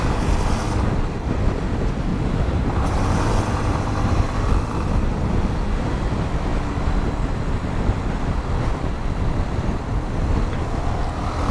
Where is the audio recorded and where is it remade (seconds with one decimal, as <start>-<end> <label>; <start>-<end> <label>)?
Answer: 0.0-2.1 recorded; 2.1-4.5 remade; 4.5-11.5 recorded